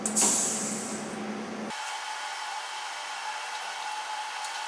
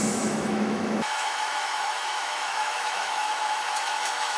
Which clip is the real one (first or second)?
first